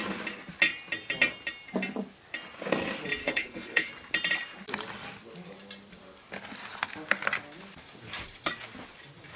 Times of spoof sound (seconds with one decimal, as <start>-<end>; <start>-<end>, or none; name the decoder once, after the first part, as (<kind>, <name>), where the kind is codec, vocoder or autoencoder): 3.2-3.9 (codec, HILCodec)